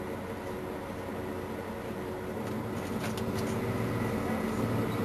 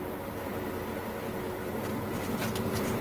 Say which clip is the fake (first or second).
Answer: second